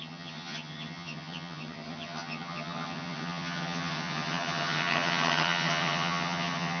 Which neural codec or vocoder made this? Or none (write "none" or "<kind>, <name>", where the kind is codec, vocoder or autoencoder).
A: vocoder, HiFi-GAN